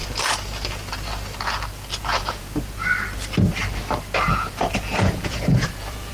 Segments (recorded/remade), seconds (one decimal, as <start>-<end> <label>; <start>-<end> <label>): 0.0-2.1 recorded; 2.1-2.6 remade; 2.6-4.3 recorded; 4.3-6.1 remade